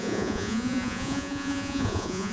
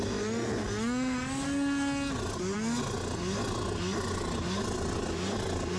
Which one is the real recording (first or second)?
second